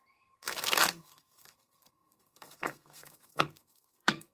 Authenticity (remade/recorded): remade